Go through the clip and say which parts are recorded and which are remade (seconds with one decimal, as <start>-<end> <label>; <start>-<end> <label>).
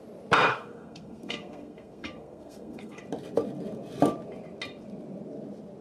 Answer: 0.0-0.5 recorded; 0.5-3.0 remade; 3.0-5.8 recorded